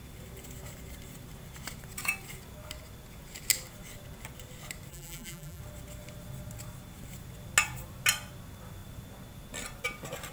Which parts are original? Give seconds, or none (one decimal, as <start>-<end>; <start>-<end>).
0.0-4.9; 5.6-10.3